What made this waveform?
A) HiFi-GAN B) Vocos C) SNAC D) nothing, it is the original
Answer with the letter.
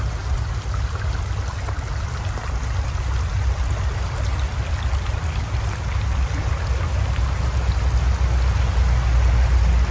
D